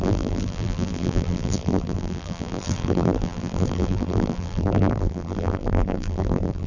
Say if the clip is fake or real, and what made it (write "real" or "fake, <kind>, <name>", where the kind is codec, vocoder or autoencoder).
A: fake, vocoder, BigVGAN v2